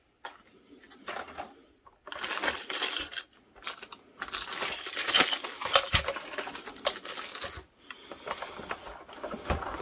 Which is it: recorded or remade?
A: recorded